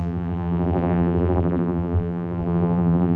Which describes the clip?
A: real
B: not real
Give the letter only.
B